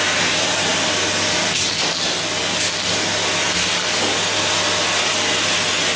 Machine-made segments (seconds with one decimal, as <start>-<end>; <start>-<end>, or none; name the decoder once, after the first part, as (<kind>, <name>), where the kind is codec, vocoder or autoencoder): none